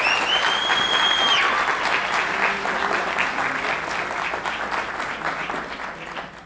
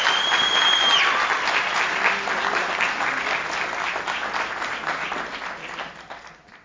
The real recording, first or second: first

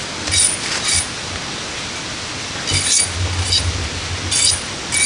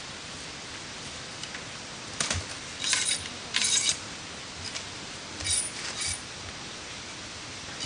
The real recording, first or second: first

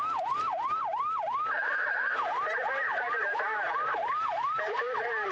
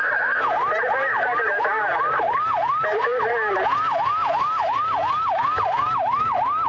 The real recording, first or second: second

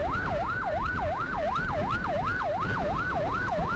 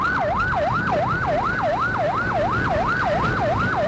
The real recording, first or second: second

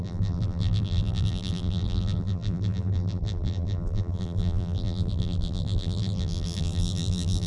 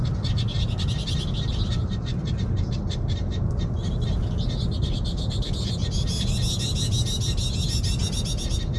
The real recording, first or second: second